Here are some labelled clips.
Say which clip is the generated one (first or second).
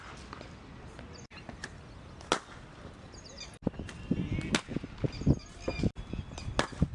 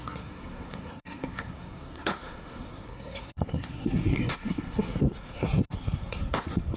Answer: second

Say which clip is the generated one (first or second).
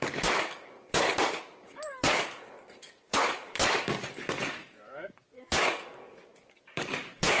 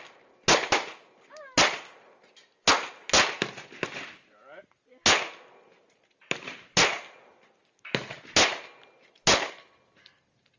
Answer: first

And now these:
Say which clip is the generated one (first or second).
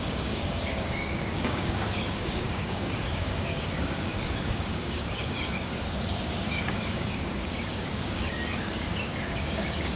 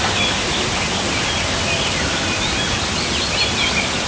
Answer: first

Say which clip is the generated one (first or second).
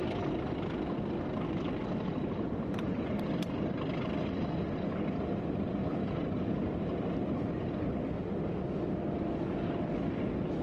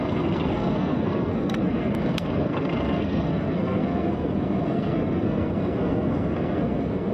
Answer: second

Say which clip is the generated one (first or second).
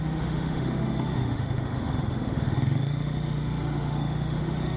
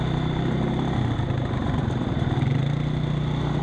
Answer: first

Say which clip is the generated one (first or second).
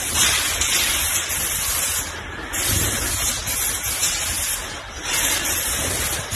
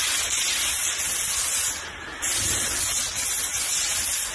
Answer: first